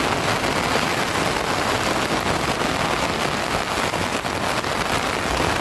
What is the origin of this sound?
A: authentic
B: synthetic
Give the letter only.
A